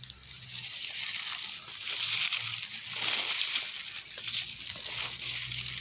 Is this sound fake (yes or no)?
no